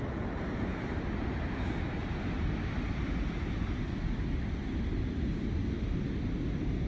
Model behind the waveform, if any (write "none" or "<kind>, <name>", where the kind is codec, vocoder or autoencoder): none